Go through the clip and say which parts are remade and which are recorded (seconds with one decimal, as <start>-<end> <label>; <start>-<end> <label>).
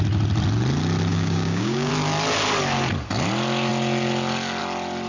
0.0-1.1 recorded; 1.1-1.9 remade; 1.9-5.1 recorded